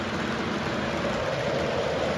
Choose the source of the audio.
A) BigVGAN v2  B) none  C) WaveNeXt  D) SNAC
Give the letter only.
B